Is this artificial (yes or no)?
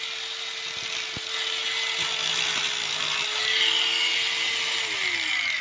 no